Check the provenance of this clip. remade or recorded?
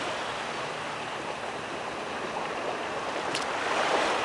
recorded